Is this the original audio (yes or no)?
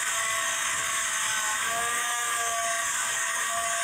no